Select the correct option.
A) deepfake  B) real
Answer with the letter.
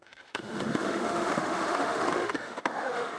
A